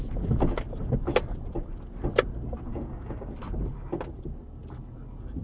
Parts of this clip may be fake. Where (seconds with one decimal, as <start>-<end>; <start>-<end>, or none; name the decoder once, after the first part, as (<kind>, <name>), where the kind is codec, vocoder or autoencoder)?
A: 2.7-3.3 (codec, DAC)